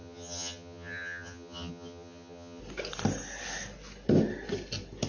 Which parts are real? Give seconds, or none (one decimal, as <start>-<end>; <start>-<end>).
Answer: 2.6-5.1